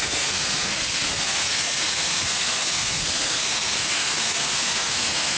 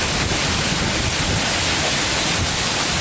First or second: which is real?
second